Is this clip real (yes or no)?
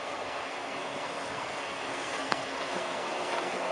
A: no